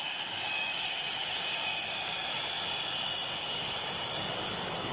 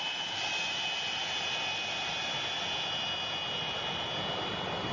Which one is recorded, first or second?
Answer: second